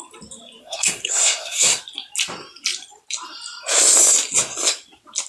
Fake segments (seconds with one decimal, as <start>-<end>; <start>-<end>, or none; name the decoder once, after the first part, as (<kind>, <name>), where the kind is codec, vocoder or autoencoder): 0.6-1.8 (codec, SNAC)